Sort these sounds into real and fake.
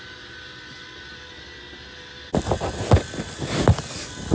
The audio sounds real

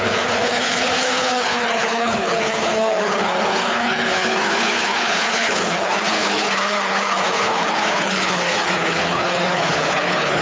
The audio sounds fake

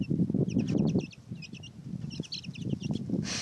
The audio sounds real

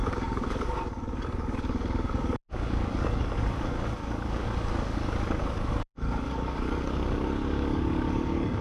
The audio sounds fake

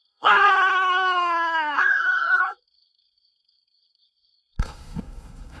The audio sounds fake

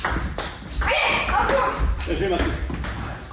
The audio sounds real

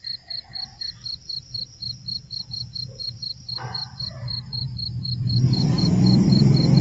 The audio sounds fake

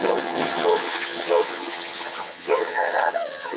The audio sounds fake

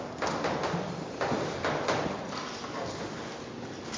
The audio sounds real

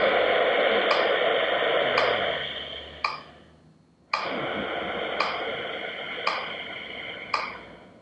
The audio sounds real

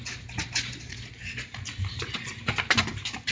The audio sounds real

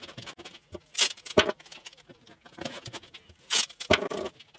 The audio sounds real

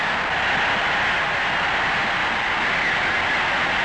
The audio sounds real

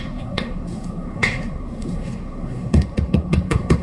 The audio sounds fake